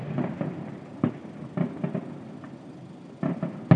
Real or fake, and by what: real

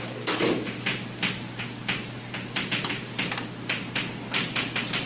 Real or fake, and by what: real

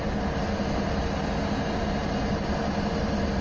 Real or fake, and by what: real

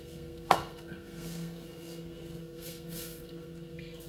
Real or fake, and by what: fake, codec, SNAC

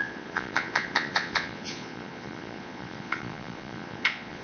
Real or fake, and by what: fake, vocoder, Vocos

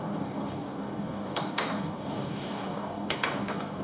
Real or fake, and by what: fake, codec, DAC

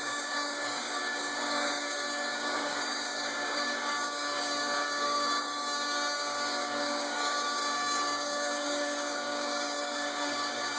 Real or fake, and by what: fake, codec, DAC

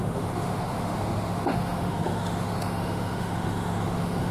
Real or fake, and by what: fake, autoencoder, DAC-VAE